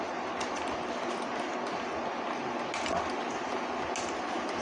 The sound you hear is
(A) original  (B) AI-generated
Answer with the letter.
A